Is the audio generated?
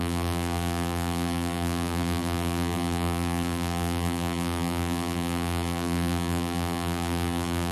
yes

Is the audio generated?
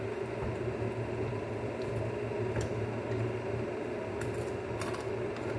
no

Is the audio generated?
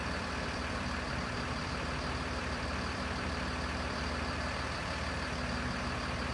yes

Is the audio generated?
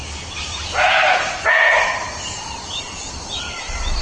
yes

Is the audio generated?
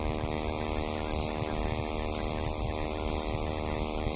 no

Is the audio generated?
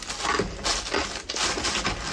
no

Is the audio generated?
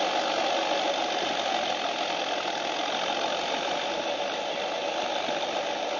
no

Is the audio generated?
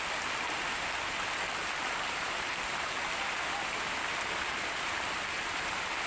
no